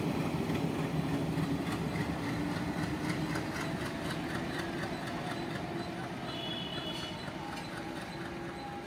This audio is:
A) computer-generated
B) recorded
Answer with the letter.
B